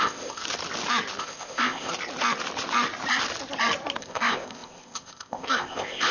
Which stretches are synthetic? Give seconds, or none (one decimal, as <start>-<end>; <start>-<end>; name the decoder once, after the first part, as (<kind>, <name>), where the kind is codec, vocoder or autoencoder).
0.0-0.4 (codec, ZipCodec); 1.2-1.9; 4.0-6.1